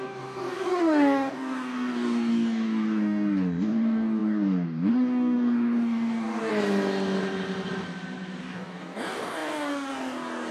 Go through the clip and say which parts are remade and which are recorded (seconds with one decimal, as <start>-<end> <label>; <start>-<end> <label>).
0.0-6.5 remade; 6.5-8.4 recorded; 8.4-10.5 remade